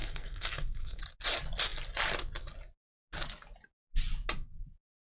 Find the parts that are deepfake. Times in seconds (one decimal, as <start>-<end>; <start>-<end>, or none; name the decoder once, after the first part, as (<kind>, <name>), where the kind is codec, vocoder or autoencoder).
0.0-1.0 (codec, SNAC)